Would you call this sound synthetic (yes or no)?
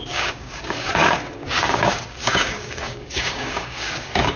yes